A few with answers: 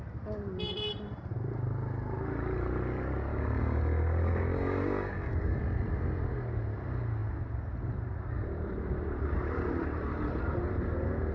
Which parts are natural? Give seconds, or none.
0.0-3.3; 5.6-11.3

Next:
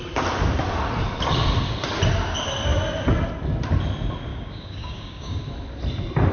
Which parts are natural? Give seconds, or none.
0.0-4.3; 5.4-6.3